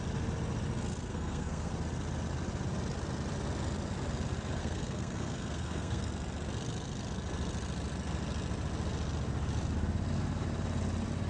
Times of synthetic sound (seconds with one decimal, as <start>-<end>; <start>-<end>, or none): 1.1-1.7; 4.6-6.1